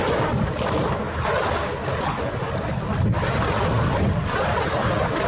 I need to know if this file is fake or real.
real